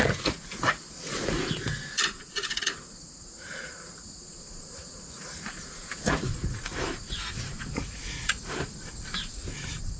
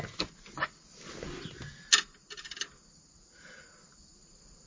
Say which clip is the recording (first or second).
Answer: second